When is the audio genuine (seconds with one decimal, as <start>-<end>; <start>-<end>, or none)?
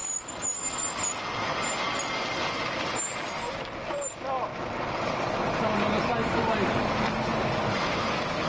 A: 0.0-6.2; 6.9-8.5